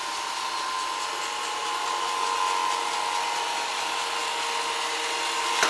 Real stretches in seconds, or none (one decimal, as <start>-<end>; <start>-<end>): 0.0-5.7